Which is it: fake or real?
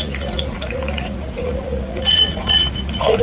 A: fake